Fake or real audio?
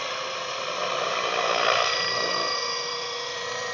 fake